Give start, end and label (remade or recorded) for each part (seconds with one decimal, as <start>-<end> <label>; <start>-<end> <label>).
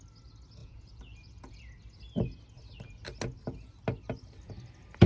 0.0-0.6 recorded; 0.6-1.6 remade; 1.6-5.1 recorded